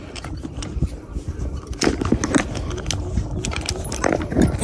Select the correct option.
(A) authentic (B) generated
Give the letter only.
A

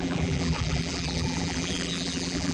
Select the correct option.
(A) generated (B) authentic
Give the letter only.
A